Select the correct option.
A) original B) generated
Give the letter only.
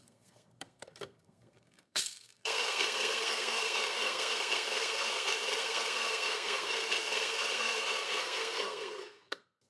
B